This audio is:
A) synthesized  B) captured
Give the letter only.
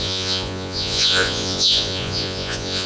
A